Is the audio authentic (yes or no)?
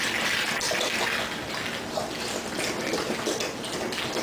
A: yes